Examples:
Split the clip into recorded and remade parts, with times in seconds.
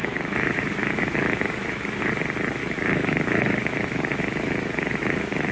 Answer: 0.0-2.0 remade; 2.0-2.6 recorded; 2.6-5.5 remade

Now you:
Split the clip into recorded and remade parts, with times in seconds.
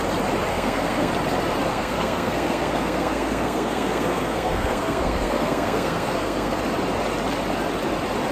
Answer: 0.0-0.5 recorded; 0.5-1.1 remade; 1.1-1.7 recorded; 1.7-6.6 remade; 6.6-8.3 recorded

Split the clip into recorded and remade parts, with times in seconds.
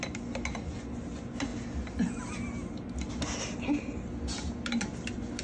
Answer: 0.0-5.4 recorded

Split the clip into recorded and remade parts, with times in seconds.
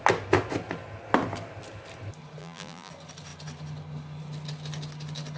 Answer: 0.0-2.4 recorded; 2.4-2.9 remade; 2.9-5.4 recorded